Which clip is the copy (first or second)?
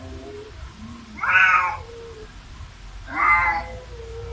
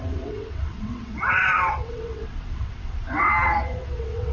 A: second